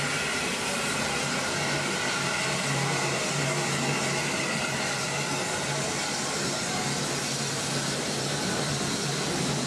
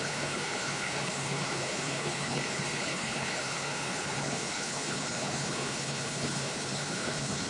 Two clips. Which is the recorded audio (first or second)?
first